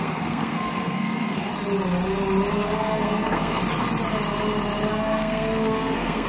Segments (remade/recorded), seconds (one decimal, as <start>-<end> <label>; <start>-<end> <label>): 0.0-1.5 remade; 1.5-2.5 recorded; 2.5-3.6 remade; 3.6-4.9 recorded; 4.9-6.3 remade